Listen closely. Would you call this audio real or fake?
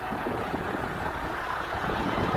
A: fake